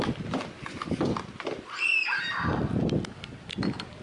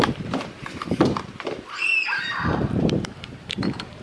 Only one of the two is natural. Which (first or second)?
first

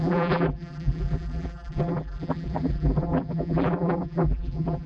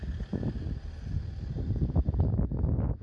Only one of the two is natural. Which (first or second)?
second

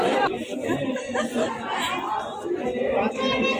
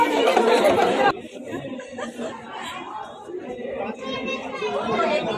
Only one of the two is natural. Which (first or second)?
first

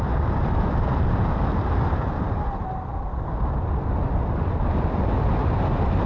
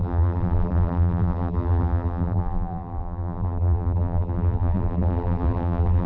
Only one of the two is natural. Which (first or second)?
first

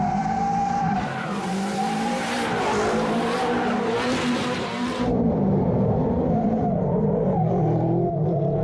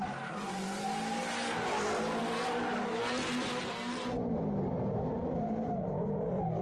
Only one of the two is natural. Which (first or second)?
second